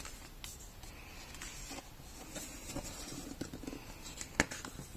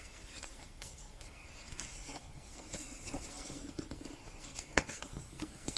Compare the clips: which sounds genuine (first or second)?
first